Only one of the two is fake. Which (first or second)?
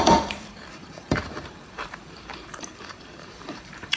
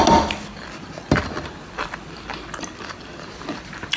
first